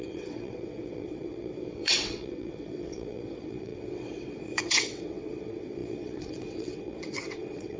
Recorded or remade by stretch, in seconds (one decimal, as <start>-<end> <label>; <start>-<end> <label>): 0.0-7.8 remade